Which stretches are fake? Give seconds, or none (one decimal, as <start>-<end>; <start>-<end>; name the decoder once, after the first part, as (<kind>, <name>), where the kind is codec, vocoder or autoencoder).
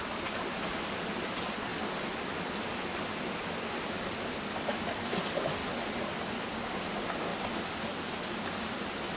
none